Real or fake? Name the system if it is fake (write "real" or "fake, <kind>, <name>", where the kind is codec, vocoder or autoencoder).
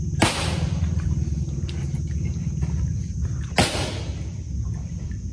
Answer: real